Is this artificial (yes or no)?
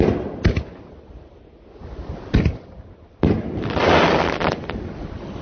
no